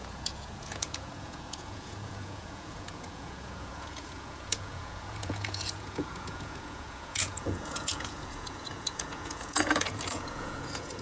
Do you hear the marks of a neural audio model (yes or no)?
yes